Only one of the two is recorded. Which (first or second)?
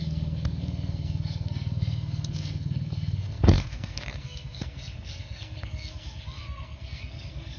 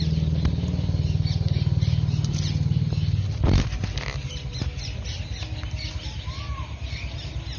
second